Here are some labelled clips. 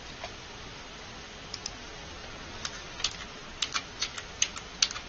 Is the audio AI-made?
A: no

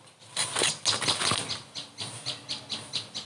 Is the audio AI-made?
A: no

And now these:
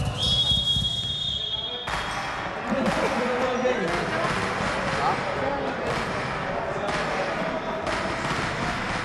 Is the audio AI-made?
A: no